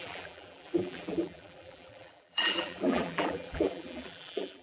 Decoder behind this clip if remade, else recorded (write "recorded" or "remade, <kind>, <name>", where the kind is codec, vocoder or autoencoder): remade, vocoder, BigVGAN v2